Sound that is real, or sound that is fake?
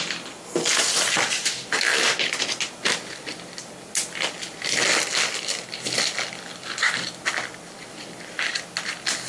real